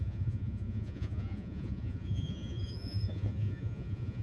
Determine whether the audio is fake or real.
fake